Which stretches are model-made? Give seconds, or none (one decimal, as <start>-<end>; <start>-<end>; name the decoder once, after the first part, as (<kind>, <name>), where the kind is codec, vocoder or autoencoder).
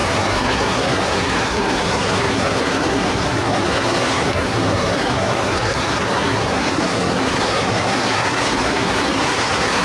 0.0-9.8 (codec, SNAC)